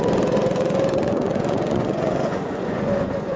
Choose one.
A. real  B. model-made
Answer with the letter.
B